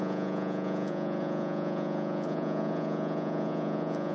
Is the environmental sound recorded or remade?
remade